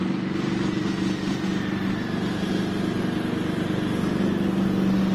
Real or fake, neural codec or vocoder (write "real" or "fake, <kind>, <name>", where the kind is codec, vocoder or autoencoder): real